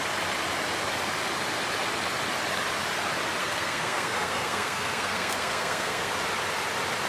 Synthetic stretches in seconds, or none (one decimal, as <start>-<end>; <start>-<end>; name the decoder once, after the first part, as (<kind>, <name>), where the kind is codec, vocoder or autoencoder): 3.4-6.1 (codec, SNAC)